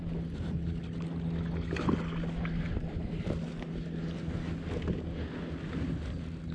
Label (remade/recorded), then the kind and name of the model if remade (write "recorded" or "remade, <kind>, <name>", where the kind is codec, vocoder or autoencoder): recorded